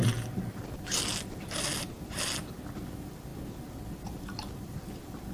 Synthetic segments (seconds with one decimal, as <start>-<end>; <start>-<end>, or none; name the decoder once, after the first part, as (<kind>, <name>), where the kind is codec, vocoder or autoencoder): none